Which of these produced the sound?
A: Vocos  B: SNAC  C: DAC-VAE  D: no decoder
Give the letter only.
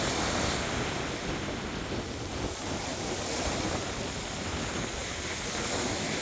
D